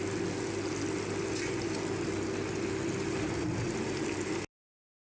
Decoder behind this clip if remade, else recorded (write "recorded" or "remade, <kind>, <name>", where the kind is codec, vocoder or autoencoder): recorded